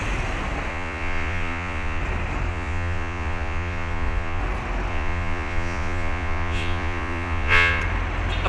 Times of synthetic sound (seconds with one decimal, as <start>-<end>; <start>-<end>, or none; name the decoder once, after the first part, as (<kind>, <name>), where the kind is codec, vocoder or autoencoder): 0.7-2.0 (vocoder, Vocos); 2.5-4.4; 4.9-7.8